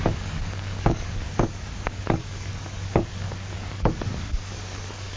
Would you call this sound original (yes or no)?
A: no